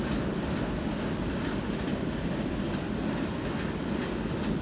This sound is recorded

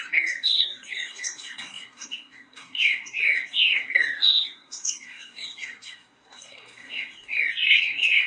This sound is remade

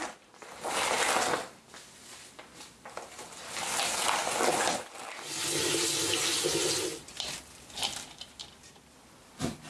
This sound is recorded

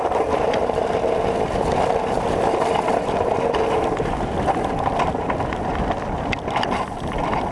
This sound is recorded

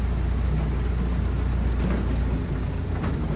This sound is recorded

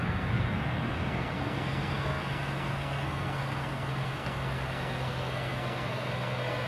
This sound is remade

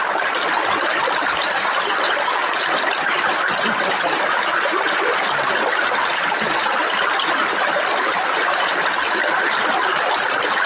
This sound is remade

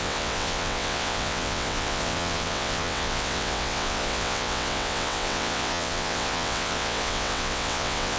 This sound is remade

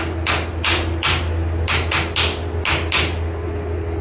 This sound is recorded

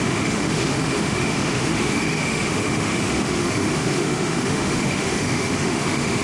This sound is remade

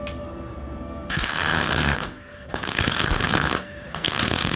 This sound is remade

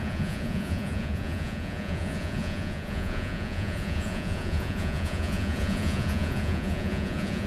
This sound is remade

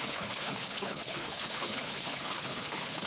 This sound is remade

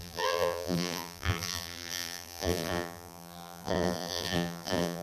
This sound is remade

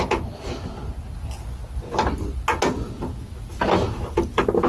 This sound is recorded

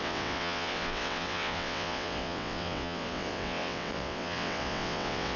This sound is remade